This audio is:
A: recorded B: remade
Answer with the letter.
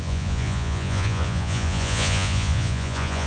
B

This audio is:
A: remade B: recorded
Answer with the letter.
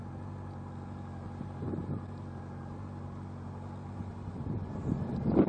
B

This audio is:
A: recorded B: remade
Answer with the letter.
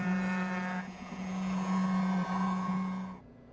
B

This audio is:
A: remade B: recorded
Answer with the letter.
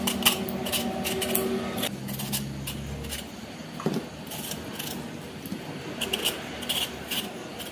B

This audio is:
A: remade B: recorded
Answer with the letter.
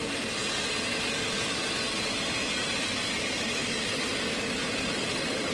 B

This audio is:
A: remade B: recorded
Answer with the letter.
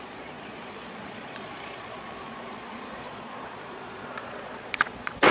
A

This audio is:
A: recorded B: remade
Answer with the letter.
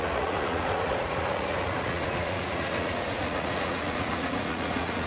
B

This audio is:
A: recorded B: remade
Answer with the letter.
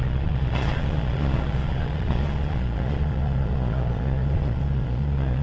B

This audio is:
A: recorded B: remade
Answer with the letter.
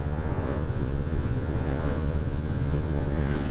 B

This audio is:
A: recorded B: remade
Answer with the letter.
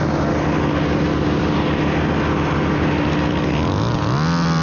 A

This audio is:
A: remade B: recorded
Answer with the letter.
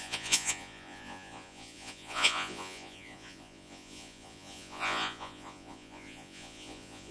A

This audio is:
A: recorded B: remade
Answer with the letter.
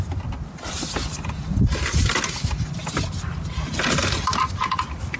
A